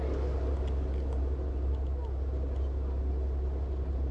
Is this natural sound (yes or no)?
yes